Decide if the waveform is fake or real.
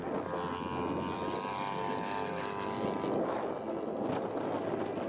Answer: real